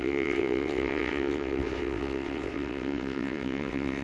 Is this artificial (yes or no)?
yes